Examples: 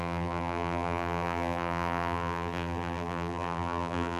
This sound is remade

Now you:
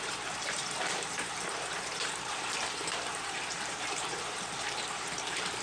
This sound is remade